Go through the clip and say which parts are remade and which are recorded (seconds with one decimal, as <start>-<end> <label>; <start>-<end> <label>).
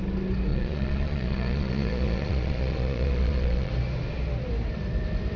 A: 0.0-0.5 recorded; 0.5-3.7 remade; 3.7-5.4 recorded